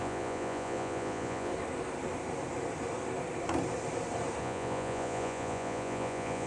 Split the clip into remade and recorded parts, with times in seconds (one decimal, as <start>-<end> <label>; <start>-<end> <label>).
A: 0.0-1.5 remade; 1.5-4.4 recorded; 4.4-6.5 remade

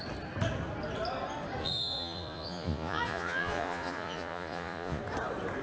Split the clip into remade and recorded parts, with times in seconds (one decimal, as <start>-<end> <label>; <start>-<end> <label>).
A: 0.0-1.6 recorded; 1.6-5.0 remade; 5.0-5.6 recorded

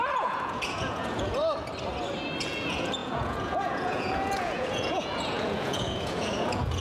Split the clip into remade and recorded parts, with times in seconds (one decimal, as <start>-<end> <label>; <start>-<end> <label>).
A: 0.0-1.4 remade; 1.4-2.4 recorded; 2.4-6.8 remade

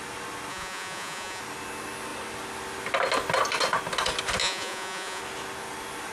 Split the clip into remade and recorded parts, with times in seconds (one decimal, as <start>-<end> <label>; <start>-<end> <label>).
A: 0.0-0.5 recorded; 0.5-1.4 remade; 1.4-4.4 recorded; 4.4-5.2 remade; 5.2-6.1 recorded

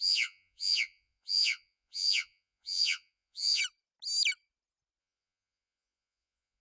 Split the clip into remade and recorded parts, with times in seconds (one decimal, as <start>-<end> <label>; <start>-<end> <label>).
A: 0.0-3.6 remade; 3.6-5.0 recorded; 5.0-6.6 remade

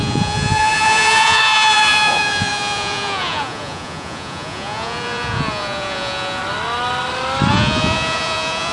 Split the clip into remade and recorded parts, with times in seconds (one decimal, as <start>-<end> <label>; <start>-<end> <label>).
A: 0.0-6.4 remade; 6.4-7.5 recorded; 7.5-8.7 remade